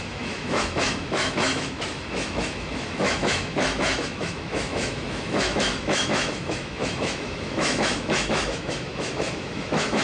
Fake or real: fake